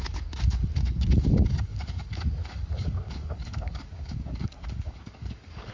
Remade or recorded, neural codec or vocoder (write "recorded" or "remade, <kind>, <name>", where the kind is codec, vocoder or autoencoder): remade, codec, DAC